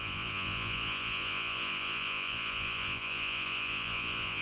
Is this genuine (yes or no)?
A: no